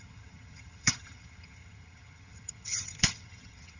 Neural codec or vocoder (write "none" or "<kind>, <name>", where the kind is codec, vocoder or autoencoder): vocoder, HiFi-GAN